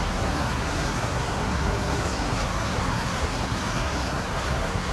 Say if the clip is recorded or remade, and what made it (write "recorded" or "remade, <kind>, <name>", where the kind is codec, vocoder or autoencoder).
remade, codec, SNAC